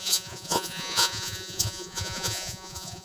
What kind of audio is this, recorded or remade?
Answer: remade